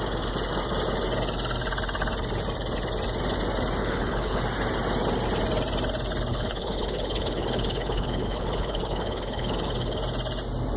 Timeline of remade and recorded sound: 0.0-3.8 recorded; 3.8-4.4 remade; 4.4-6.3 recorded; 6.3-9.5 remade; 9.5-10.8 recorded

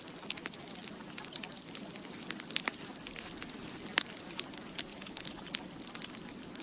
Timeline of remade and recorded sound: 0.0-4.9 recorded; 4.9-5.4 remade; 5.4-6.6 recorded

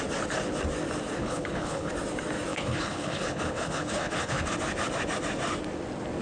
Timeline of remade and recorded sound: 0.0-1.2 recorded; 1.2-1.9 remade; 1.9-2.5 recorded; 2.5-4.5 remade; 4.5-6.2 recorded

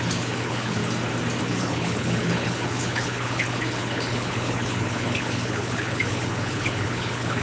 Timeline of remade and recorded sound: 0.0-0.8 remade; 0.8-1.4 recorded; 1.4-7.4 remade

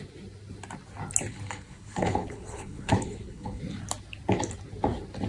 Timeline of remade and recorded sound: 0.0-1.3 recorded; 1.3-3.6 remade; 3.6-5.3 recorded